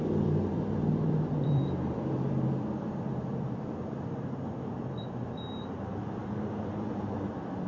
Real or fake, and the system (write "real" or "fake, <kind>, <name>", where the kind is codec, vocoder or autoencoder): fake, vocoder, BigVGAN v2